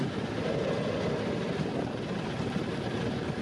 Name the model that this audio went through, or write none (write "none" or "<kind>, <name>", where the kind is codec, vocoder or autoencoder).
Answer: none